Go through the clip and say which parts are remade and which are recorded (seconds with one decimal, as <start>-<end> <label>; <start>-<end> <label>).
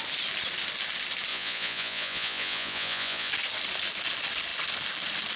0.0-1.3 recorded; 1.3-3.3 remade; 3.3-5.4 recorded